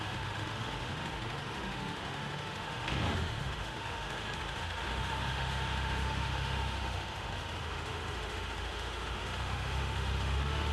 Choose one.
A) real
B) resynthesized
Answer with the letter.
B